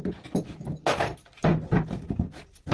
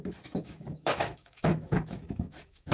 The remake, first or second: second